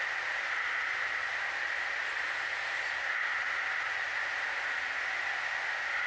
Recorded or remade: recorded